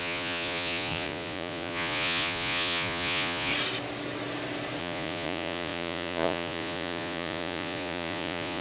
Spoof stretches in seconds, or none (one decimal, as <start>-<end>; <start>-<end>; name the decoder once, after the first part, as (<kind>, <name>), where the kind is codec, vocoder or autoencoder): 0.0-3.5 (vocoder, Vocos); 4.8-8.6